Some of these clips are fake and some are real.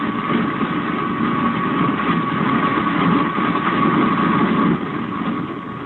real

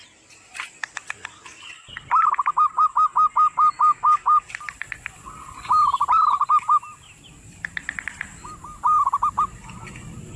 real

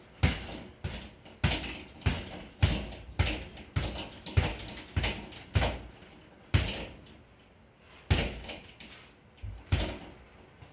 real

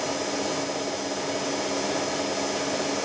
real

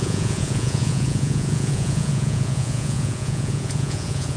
fake